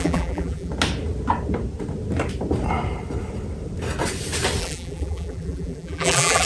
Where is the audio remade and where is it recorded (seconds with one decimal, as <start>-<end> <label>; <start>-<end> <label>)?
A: 0.0-0.7 remade; 0.7-4.6 recorded; 4.6-6.5 remade